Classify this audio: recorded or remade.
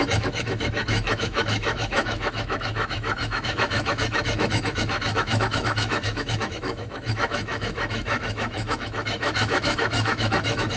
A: remade